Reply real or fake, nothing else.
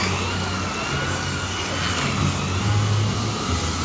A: real